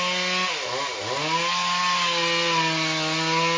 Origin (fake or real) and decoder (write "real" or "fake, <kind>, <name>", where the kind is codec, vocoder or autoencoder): real